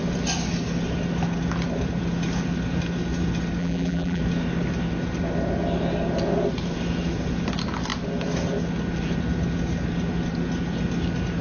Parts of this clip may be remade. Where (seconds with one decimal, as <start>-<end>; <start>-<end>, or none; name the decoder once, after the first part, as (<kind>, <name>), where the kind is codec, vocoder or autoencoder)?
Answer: 3.6-4.2 (vocoder, BigVGAN v2)